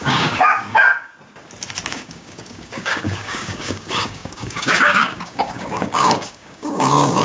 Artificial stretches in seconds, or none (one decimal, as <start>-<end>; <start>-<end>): 0.0-1.1; 1.9-7.2